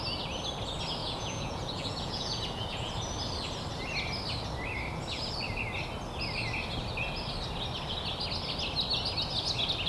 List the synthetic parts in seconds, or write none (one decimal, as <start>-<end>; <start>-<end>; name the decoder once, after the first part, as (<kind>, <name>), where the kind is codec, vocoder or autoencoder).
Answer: 1.0-2.9 (vocoder, Vocos)